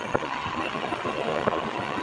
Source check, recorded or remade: remade